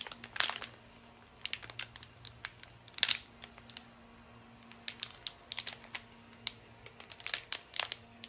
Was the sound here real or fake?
real